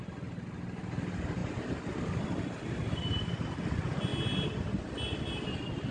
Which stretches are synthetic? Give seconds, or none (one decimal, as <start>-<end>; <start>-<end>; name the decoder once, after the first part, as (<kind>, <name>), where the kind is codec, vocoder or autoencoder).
none